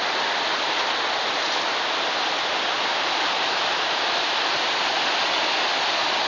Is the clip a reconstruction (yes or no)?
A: no